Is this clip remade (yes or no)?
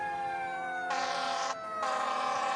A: no